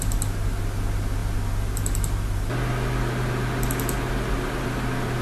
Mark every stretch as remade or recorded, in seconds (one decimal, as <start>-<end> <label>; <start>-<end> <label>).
0.0-5.2 recorded